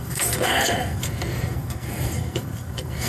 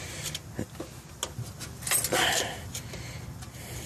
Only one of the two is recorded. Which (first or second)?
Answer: second